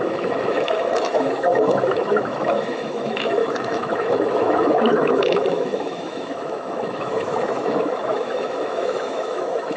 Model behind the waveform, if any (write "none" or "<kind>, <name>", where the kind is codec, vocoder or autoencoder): autoencoder, DAC-VAE